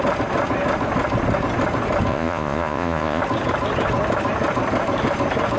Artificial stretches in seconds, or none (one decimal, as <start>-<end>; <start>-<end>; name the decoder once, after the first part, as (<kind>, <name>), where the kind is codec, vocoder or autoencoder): 2.1-3.2 (vocoder, Vocos)